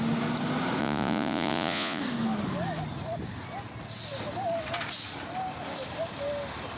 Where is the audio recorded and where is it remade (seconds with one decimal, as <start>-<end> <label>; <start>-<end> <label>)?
0.0-0.8 recorded; 0.8-2.0 remade; 2.0-6.8 recorded